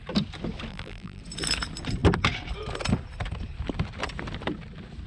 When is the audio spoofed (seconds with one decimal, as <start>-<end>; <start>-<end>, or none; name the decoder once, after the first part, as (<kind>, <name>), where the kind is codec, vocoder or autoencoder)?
0.7-1.2 (vocoder, BigVGAN v2)